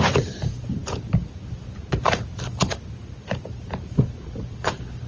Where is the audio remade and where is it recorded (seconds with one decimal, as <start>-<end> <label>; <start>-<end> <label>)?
0.0-5.1 remade